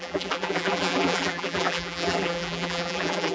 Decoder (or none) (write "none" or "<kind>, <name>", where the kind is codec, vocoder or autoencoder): vocoder, BigVGAN v2